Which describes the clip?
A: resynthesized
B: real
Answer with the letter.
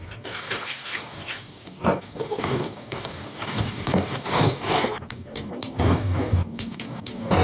A